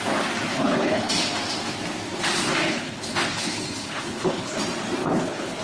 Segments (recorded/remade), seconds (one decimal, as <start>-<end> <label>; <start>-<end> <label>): 0.0-0.5 recorded; 0.5-1.1 remade; 1.1-2.6 recorded; 2.6-4.6 remade; 4.6-5.0 recorded; 5.0-5.6 remade